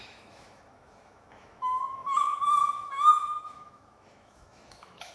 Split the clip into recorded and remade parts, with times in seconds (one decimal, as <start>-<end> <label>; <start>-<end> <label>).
0.0-5.1 remade